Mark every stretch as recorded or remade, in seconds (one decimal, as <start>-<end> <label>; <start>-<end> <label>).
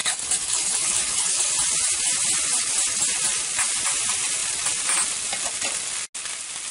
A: 0.0-1.5 remade; 1.5-6.7 recorded